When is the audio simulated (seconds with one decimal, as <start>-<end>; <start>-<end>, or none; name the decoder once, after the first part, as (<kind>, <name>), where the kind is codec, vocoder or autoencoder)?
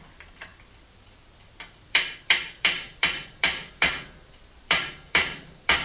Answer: 0.0-5.8 (vocoder, BigVGAN v2)